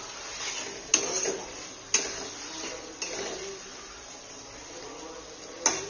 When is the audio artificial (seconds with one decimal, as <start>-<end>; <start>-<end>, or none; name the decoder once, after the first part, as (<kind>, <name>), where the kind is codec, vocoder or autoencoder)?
none